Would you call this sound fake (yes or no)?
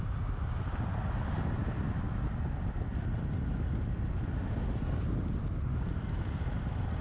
no